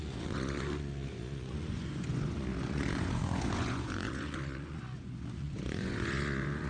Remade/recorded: remade